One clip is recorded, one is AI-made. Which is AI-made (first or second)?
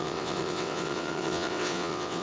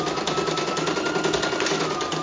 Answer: first